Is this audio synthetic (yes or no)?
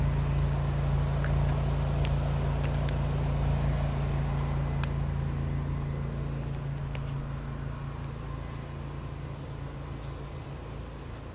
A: no